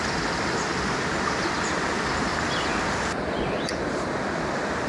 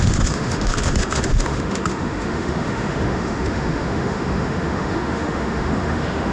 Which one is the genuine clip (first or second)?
first